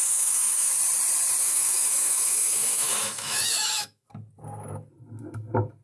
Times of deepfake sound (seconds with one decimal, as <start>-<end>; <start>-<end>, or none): 0.0-0.7; 1.4-4.1